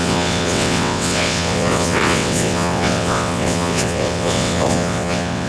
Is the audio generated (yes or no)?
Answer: yes